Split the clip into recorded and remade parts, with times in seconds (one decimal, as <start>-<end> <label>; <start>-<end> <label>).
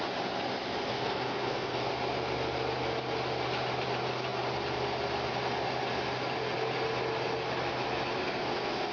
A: 0.0-0.9 recorded; 0.9-1.9 remade; 1.9-8.2 recorded; 8.2-8.9 remade